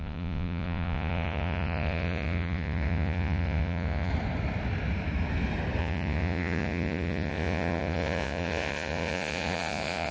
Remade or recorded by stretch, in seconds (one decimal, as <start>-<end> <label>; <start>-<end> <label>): 0.0-4.1 remade; 4.1-5.8 recorded; 5.8-10.1 remade